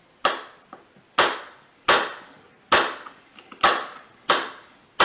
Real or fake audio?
real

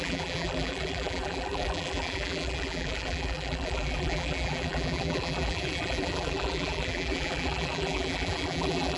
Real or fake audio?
fake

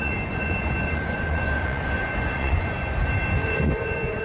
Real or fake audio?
fake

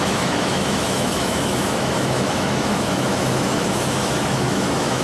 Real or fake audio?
fake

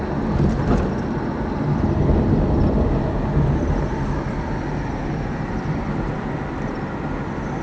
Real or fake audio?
real